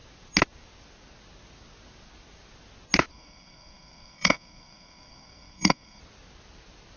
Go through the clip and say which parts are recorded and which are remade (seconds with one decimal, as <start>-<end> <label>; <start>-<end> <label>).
0.0-3.1 recorded; 3.1-6.0 remade; 6.0-7.0 recorded